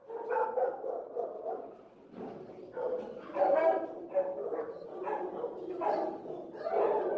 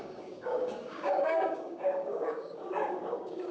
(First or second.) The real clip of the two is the first